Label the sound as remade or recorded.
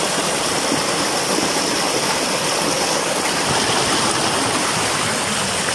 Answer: recorded